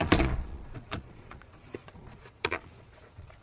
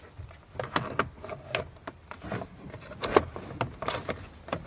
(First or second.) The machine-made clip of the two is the first